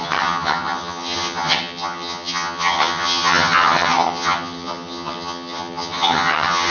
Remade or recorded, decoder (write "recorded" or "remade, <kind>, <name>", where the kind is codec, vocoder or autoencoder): remade, vocoder, HiFi-GAN